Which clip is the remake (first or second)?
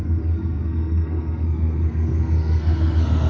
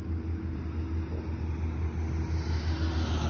first